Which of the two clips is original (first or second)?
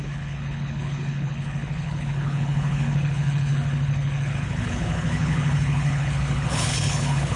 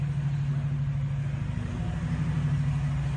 second